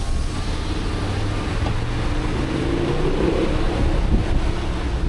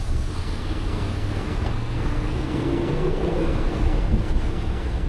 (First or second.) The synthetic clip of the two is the second